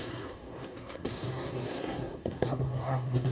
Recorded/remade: remade